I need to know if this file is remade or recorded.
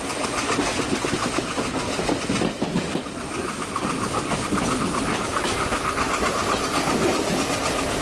recorded